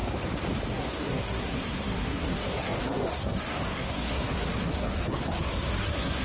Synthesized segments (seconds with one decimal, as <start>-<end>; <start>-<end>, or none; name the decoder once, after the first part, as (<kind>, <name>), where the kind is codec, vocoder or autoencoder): 0.7-6.2 (codec, SNAC)